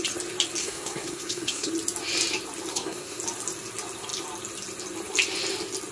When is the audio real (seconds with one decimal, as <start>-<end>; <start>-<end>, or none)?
0.0-0.6; 1.7-2.7; 3.2-5.9